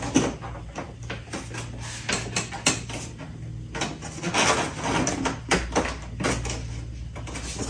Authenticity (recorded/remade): recorded